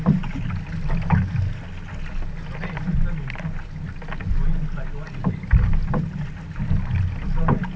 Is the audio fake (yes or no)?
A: no